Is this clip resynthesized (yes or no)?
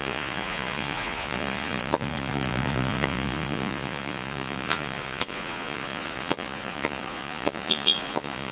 yes